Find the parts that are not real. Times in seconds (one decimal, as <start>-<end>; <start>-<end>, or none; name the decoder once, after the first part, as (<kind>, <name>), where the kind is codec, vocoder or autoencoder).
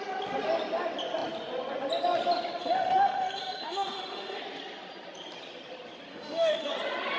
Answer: 2.6-4.4 (autoencoder, DAC-VAE); 6.1-6.7